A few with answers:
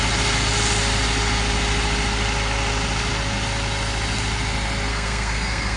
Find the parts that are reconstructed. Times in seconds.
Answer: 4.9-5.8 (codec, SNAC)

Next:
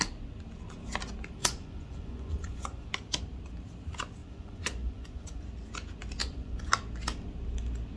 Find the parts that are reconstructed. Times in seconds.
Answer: 1.4-2.9 (vocoder, Vocos); 4.2-5.4; 6.2-6.7